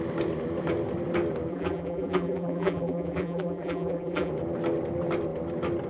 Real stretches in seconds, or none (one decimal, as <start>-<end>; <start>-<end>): 0.0-1.5; 4.3-5.9